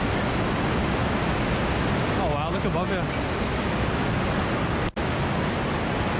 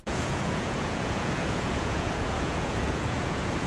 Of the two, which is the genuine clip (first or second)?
first